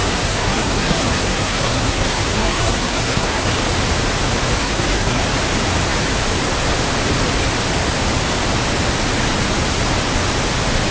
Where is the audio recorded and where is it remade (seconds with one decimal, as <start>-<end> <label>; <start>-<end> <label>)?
0.0-3.5 remade; 3.5-4.6 recorded; 4.6-5.2 remade; 5.2-10.9 recorded